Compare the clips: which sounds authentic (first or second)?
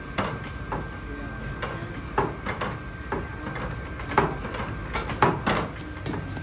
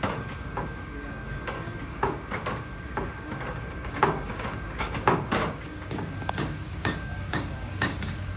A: first